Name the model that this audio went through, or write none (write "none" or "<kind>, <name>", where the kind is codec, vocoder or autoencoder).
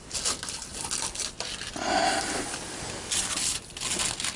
none